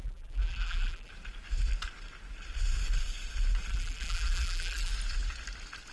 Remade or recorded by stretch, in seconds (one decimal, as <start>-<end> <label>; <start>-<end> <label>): 0.0-1.1 remade; 1.1-3.7 recorded; 3.7-4.9 remade; 4.9-5.9 recorded